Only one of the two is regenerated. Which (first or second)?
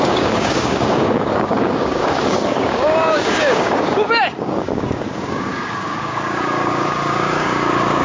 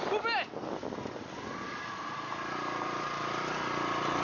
first